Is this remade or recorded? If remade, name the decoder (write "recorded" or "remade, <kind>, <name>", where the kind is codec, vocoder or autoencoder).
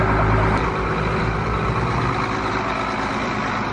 recorded